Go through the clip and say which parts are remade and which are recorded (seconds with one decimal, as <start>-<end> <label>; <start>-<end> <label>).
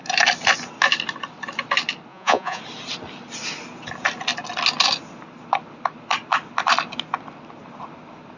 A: 0.0-2.1 recorded; 2.1-2.6 remade; 2.6-8.4 recorded